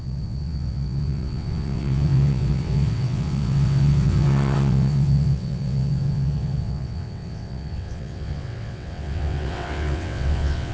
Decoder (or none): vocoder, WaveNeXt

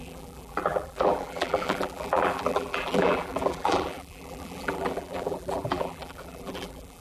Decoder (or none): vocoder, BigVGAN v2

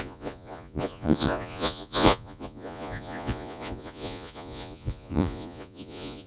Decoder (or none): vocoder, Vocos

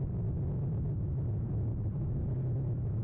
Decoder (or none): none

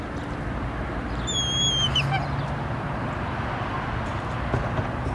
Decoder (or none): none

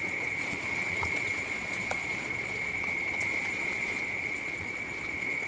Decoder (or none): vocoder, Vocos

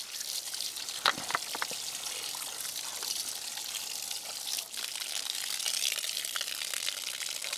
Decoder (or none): none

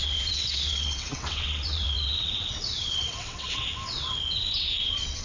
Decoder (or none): vocoder, WaveNeXt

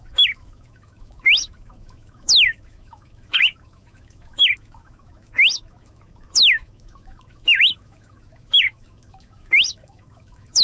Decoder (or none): autoencoder, DAC-VAE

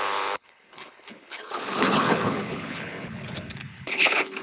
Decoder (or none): codec, HILCodec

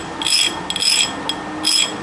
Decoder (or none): none